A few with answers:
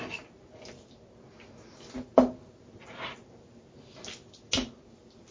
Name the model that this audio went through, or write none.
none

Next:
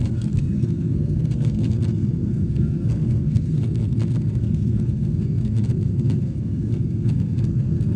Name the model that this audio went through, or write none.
codec, SNAC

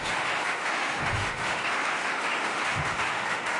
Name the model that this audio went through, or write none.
autoencoder, DAC-VAE